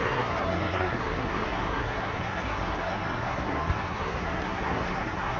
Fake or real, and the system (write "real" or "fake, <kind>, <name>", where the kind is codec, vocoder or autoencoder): fake, codec, SNAC